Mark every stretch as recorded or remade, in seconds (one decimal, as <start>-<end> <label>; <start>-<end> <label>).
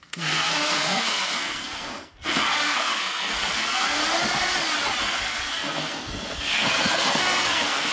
0.0-4.0 remade; 4.0-5.0 recorded; 5.0-7.9 remade